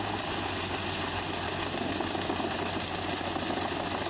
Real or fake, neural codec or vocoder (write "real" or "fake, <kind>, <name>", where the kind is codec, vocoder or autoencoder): real